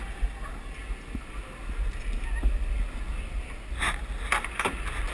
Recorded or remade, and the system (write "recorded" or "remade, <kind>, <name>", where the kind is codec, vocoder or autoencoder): recorded